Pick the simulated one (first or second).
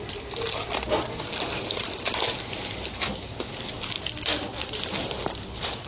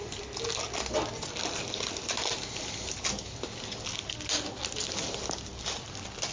first